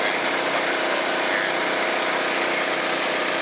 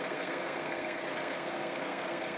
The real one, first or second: first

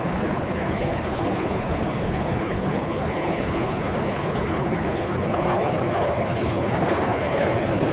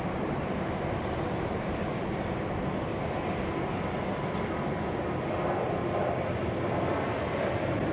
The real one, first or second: second